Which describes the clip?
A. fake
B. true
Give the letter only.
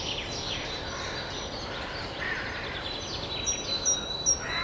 B